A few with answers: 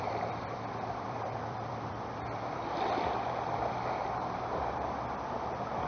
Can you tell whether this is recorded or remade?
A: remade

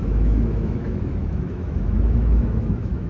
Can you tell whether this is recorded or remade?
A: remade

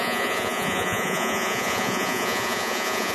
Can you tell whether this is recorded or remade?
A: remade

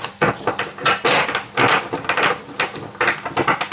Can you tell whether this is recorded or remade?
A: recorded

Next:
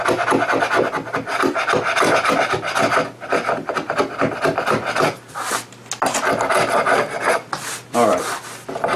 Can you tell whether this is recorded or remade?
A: recorded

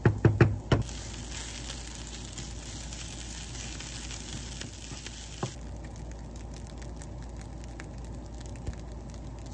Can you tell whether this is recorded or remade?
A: recorded